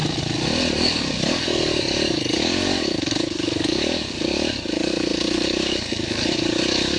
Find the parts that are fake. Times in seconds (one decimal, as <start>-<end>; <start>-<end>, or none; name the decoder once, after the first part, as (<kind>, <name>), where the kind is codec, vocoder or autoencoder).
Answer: 0.7-7.0 (codec, DAC)